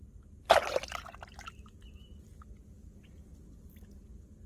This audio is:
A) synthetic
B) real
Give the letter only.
B